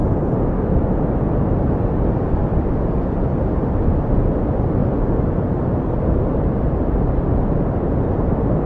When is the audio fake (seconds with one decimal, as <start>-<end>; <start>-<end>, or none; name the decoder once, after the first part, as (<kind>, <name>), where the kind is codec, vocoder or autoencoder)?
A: 0.0-0.6 (vocoder, BigVGAN v2); 2.4-4.0

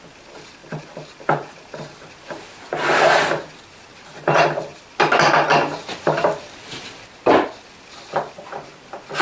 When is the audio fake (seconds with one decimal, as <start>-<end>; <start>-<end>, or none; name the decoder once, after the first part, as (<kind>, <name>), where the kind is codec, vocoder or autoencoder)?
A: 0.6-2.1 (vocoder, BigVGAN v2); 3.9-4.7

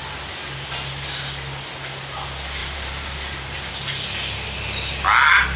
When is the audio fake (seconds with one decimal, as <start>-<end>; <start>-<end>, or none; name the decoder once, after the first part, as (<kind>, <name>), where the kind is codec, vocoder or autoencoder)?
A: 2.6-3.7 (vocoder, BigVGAN v2)

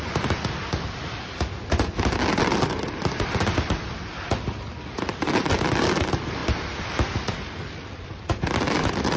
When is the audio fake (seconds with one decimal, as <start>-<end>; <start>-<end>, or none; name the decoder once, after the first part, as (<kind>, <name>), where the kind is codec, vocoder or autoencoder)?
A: none

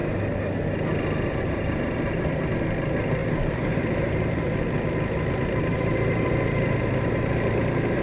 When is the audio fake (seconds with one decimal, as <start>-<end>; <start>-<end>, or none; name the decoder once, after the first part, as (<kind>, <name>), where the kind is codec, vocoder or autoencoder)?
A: 0.0-2.5 (vocoder, BigVGAN v2); 3.2-4.6; 5.7-8.0

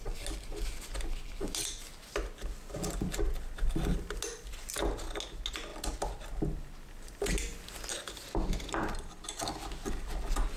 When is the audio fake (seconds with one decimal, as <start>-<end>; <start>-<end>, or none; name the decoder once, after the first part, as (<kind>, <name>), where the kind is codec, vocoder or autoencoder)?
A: none

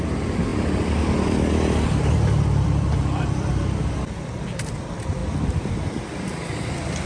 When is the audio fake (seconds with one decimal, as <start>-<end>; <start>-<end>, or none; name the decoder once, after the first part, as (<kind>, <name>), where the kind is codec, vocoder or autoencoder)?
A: 0.0-6.4 (vocoder, BigVGAN v2)